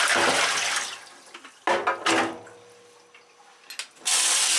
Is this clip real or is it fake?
real